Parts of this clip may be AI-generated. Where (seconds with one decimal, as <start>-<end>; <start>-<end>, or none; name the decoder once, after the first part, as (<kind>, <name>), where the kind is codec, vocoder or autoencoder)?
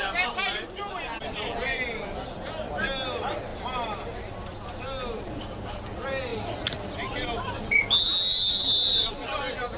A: none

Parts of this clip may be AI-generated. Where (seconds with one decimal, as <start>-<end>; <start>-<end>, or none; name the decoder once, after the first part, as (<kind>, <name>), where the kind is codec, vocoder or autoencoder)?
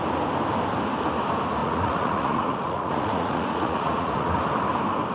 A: 1.6-4.3 (vocoder, Vocos)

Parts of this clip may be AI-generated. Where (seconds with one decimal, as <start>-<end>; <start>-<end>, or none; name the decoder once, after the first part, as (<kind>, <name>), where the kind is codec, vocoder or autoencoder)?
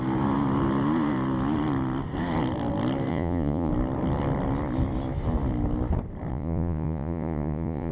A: 3.1-3.7 (vocoder, Vocos); 6.3-7.9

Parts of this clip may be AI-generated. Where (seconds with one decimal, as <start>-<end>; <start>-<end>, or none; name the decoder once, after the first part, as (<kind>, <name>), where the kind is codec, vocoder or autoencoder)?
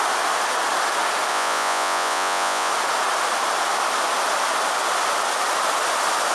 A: 1.3-2.7 (vocoder, Vocos)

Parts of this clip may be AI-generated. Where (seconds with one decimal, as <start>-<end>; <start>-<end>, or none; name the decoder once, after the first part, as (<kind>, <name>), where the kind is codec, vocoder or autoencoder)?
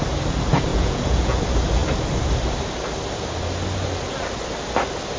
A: 0.7-1.4 (vocoder, Vocos)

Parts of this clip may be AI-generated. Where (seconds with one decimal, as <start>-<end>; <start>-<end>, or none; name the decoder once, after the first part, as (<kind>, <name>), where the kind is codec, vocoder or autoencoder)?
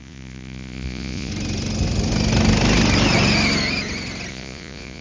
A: 0.0-1.3 (vocoder, Vocos); 4.3-5.0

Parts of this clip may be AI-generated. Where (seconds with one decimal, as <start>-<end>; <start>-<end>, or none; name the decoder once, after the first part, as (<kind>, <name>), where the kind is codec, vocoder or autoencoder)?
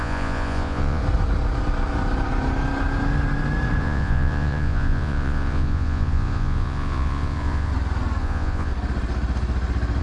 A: 0.0-1.0 (vocoder, Vocos); 3.8-7.7; 8.2-8.7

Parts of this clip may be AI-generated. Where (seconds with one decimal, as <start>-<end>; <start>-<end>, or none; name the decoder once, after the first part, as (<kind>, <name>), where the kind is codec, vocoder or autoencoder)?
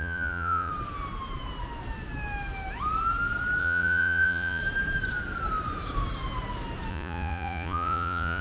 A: 0.0-0.7 (vocoder, Vocos); 3.6-4.6; 6.9-8.4